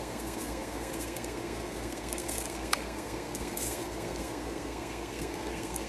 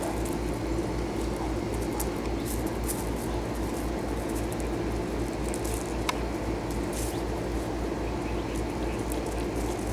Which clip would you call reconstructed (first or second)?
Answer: first